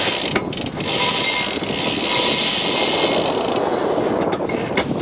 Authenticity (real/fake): real